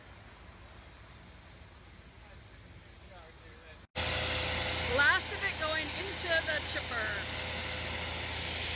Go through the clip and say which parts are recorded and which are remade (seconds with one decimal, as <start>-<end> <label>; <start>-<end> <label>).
0.0-8.8 recorded